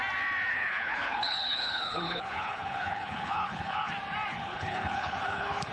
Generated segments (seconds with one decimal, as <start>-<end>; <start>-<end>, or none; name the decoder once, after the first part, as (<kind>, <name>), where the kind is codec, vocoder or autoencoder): 0.5-3.9 (codec, HILCodec); 4.3-5.7